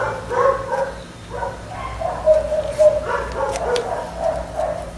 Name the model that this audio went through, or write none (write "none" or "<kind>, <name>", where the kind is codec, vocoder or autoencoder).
none